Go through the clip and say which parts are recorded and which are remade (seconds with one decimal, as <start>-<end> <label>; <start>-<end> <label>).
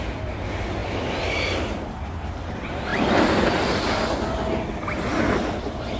0.0-6.0 recorded